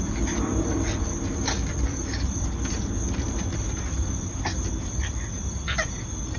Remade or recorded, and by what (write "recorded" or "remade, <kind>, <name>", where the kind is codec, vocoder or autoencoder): recorded